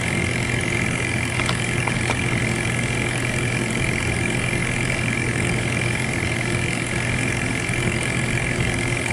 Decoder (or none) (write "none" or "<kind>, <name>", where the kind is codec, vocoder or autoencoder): codec, DAC